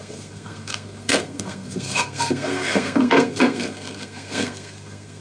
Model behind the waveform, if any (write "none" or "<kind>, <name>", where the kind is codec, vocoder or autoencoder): codec, SNAC